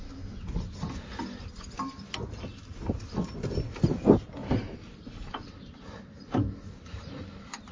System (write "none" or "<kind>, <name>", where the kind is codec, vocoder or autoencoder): none